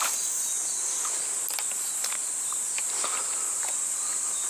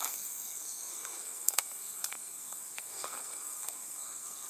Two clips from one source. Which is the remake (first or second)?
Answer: second